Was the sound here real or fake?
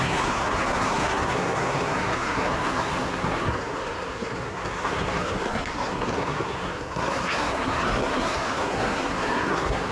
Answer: fake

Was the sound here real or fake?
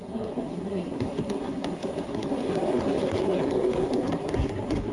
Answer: fake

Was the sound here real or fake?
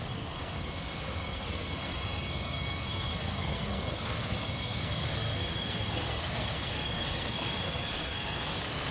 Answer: fake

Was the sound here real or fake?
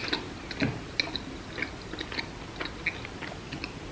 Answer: real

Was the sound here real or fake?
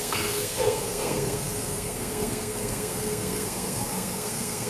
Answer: fake